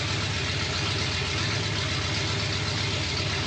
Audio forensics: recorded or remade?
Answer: recorded